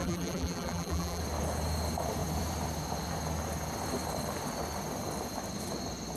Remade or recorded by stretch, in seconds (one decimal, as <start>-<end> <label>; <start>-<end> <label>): 0.0-1.2 remade; 1.2-6.2 recorded